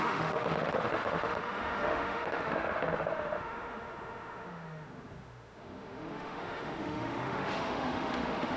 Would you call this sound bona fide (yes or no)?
no